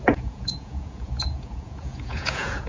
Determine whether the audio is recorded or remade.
remade